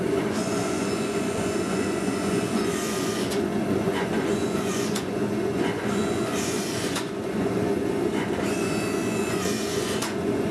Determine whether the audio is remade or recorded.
remade